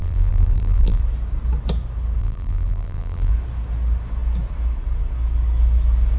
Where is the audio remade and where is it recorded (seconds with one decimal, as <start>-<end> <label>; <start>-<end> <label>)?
0.0-1.0 remade; 1.0-2.2 recorded; 2.2-3.3 remade; 3.3-6.2 recorded